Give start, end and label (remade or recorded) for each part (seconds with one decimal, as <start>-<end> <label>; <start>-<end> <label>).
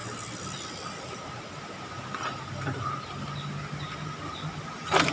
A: 0.0-5.1 recorded